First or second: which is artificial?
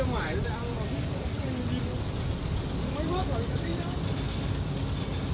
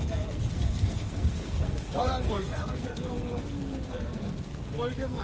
second